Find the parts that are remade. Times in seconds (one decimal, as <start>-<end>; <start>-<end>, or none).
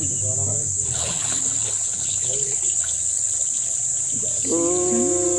0.6-3.8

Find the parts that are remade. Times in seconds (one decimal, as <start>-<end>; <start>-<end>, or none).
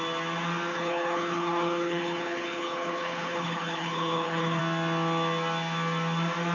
0.7-4.6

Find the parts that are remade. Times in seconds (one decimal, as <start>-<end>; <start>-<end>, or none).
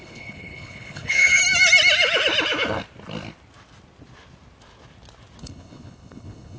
0.0-1.4; 5.4-6.6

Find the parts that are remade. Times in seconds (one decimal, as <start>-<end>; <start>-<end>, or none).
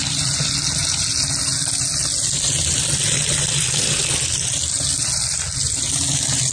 none